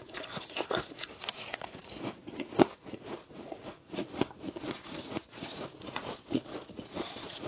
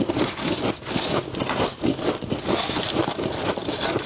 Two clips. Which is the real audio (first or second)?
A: second